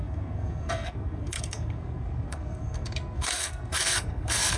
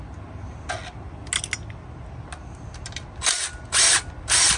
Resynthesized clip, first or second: first